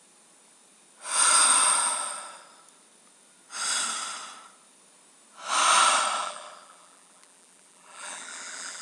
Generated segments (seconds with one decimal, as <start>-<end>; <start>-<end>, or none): 6.2-8.8